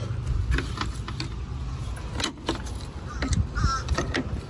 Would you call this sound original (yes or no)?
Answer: yes